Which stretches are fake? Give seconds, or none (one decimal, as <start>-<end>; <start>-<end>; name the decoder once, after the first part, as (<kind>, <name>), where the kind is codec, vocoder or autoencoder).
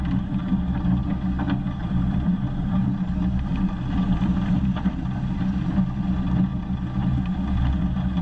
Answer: 1.8-2.8 (vocoder, BigVGAN v2); 3.5-4.6